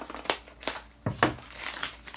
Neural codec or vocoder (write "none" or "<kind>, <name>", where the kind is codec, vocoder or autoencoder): none